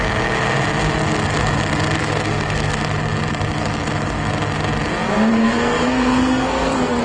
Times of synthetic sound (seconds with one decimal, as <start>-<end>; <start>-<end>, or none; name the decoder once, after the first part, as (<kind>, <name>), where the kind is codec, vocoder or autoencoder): 2.0-2.8 (codec, SNAC); 5.3-7.0